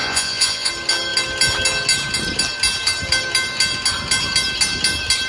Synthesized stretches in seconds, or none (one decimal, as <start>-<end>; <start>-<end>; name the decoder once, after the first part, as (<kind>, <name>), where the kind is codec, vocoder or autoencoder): 0.0-0.7 (vocoder, Vocos)